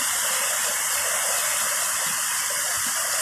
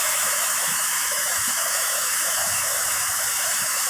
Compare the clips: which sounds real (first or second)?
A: first